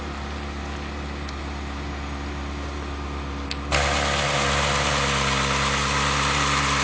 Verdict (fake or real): real